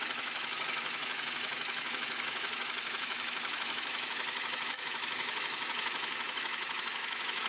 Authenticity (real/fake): fake